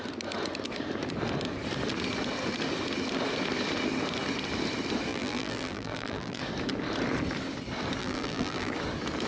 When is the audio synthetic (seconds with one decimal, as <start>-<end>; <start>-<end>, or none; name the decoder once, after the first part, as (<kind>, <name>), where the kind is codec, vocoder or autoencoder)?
5.1-6.4 (vocoder, BigVGAN v2); 8.0-8.7